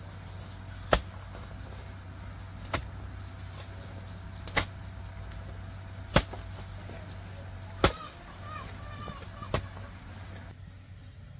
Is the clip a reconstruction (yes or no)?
no